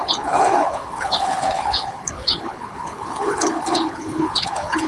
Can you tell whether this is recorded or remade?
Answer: remade